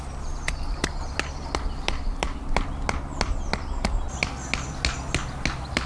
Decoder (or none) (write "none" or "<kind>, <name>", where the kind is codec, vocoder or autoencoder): none